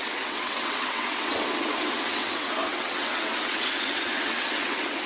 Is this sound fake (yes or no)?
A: yes